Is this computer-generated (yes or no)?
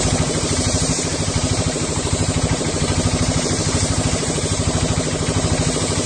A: yes